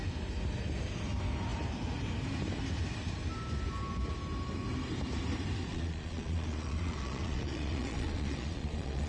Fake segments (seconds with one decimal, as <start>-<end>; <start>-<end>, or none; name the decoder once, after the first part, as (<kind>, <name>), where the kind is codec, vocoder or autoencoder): 5.7-9.1 (vocoder, Vocos)